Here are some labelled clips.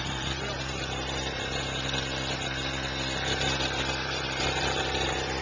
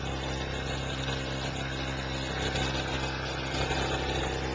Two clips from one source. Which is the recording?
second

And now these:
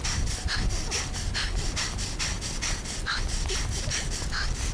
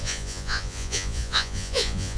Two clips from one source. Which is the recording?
first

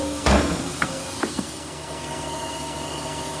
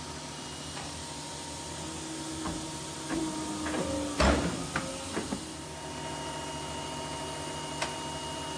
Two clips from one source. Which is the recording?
second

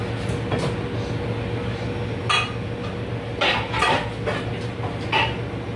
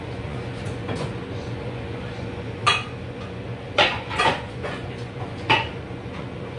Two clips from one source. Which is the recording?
first